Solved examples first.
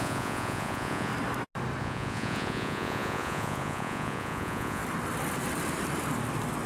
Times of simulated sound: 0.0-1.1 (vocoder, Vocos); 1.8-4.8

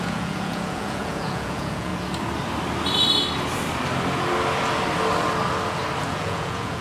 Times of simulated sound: 0.0-1.9 (vocoder, Vocos); 6.0-6.8

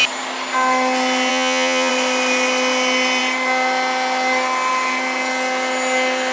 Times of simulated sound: 1.3-1.9 (vocoder, Vocos)